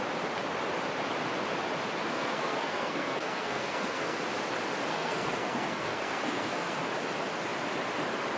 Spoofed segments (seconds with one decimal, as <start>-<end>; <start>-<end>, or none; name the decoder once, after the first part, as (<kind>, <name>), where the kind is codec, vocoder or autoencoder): 2.1-4.2 (codec, SNAC); 4.9-6.8